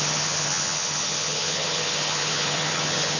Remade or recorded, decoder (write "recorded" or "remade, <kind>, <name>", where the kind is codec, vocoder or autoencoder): remade, vocoder, HiFi-GAN